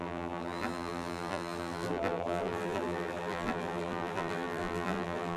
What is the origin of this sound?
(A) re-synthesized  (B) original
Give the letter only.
A